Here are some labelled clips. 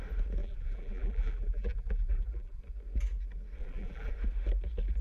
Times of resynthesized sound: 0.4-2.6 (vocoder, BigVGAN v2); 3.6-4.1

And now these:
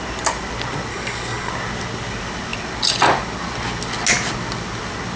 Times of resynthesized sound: 0.9-1.5 (codec, DAC)

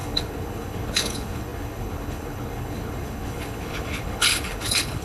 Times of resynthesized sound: 0.0-5.0 (codec, HILCodec)

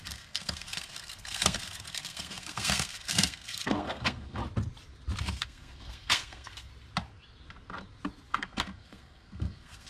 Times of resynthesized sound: 0.0-4.4 (codec, SNAC); 5.2-6.7; 8.3-9.9

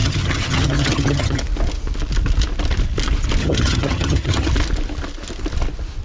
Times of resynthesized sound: 0.0-1.4 (vocoder, HiFi-GAN); 3.4-4.5